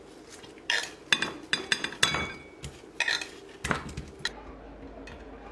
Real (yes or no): yes